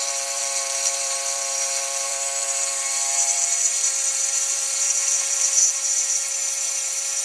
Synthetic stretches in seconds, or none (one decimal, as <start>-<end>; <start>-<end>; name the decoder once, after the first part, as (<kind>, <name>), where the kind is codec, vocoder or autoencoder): 0.0-7.2 (vocoder, BigVGAN v2)